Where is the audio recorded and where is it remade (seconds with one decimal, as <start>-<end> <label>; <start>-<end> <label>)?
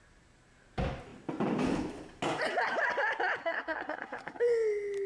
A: 0.0-3.4 recorded; 3.4-4.4 remade; 4.4-5.1 recorded